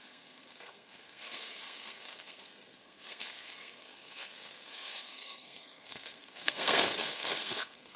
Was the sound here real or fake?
fake